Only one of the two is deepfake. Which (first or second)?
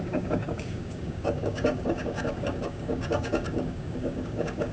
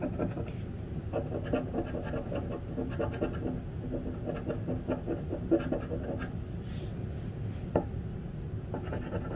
first